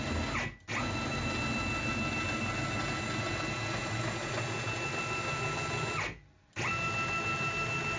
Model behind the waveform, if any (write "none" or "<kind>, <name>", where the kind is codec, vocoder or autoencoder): none